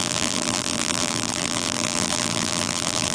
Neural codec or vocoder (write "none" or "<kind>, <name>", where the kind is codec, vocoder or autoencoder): vocoder, BigVGAN v2